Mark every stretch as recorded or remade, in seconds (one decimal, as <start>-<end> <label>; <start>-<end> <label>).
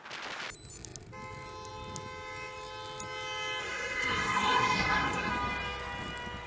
0.0-3.6 recorded; 3.6-5.3 remade; 5.3-6.5 recorded